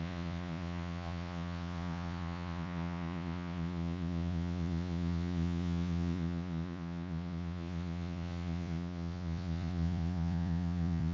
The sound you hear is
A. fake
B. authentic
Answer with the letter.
A